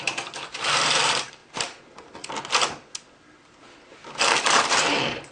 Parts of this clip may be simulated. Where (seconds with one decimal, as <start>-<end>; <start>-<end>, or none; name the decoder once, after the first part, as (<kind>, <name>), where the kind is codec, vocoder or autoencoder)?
0.0-1.4 (vocoder, BigVGAN v2); 3.8-5.3